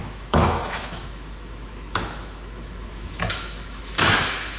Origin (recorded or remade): remade